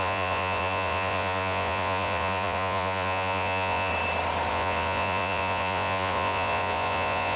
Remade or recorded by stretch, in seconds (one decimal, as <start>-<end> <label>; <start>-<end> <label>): 0.0-3.9 remade; 3.9-4.5 recorded; 4.5-7.4 remade